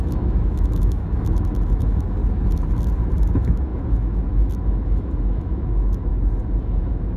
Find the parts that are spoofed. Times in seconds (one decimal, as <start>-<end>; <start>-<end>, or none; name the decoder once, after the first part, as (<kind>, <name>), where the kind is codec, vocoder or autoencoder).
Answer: 0.0-2.2 (autoencoder, DAC-VAE); 3.3-6.1; 6.6-7.2